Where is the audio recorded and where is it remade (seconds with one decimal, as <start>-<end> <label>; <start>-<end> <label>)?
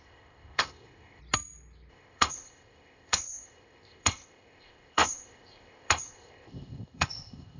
0.0-1.2 remade; 1.2-1.9 recorded; 1.9-7.6 remade